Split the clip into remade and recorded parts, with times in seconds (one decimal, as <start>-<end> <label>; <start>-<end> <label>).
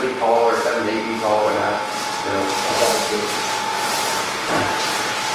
0.0-0.7 remade; 0.7-3.9 recorded; 3.9-5.3 remade